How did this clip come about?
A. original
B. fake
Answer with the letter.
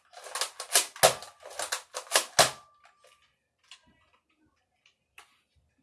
A